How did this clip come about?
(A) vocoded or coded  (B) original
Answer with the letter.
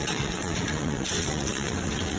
A